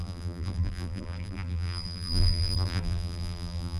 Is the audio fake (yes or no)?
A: yes